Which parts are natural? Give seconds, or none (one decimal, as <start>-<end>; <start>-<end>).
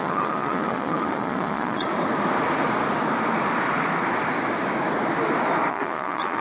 1.9-5.7